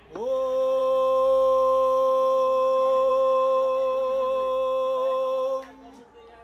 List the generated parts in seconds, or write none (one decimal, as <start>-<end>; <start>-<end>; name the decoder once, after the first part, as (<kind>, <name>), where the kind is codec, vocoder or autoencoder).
none